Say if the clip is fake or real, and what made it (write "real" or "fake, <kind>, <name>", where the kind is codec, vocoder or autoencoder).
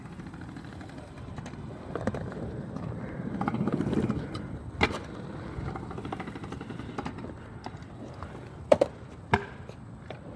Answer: fake, vocoder, BigVGAN v2